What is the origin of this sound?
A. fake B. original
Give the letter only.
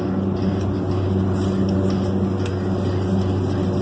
B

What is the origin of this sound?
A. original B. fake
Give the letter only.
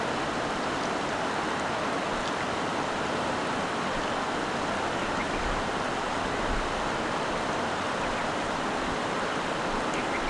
A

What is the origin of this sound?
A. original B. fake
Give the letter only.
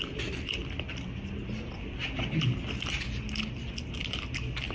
A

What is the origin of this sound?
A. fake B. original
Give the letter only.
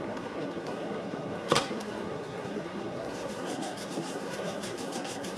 A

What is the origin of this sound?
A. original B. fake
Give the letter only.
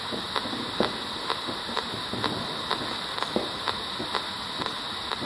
A